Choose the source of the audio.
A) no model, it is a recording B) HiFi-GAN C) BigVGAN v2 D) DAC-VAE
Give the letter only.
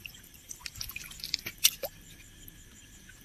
C